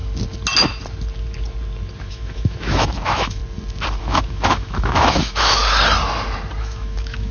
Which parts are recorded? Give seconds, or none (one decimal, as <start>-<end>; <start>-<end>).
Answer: 0.0-2.0; 3.4-4.0; 5.6-6.6